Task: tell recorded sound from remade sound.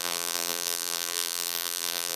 remade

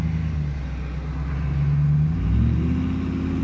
recorded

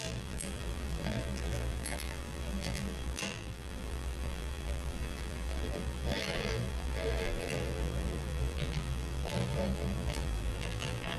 remade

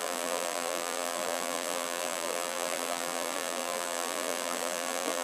remade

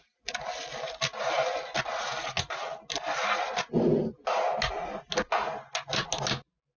recorded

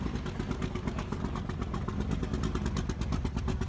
recorded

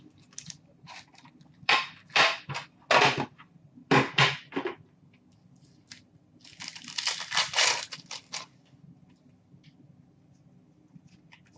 recorded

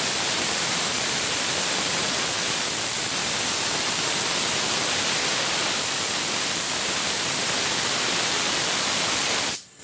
remade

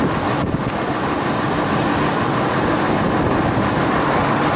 recorded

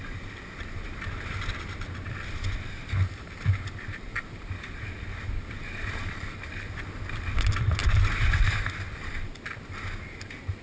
recorded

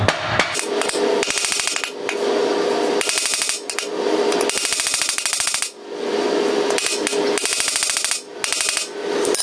recorded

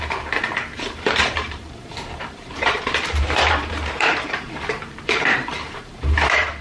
remade